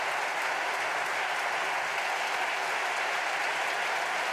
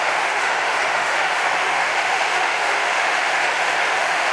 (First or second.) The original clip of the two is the first